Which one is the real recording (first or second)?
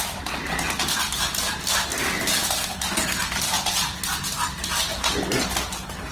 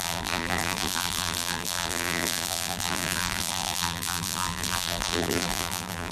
first